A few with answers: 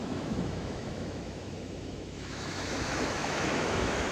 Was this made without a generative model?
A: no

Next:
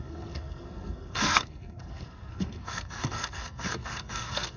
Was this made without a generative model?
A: no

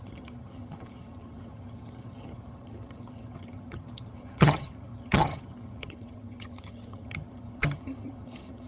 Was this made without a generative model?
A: no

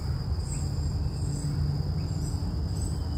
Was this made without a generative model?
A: yes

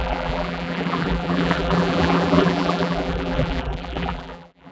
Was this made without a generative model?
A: no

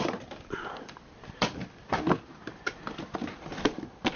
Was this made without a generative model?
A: no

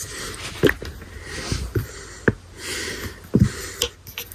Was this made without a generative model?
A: yes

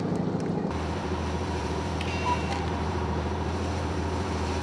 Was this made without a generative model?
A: no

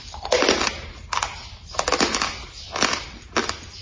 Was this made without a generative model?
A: yes